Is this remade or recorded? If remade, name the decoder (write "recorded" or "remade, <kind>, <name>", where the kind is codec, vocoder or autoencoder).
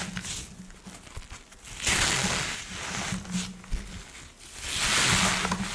recorded